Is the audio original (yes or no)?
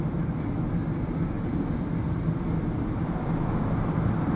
yes